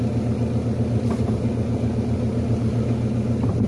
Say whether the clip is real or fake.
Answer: real